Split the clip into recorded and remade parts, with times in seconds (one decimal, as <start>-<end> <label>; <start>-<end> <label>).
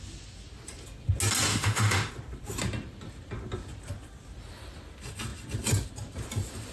0.0-1.5 recorded; 1.5-2.1 remade; 2.1-6.7 recorded